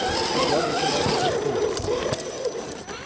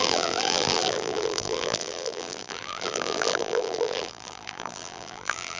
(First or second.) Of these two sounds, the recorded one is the first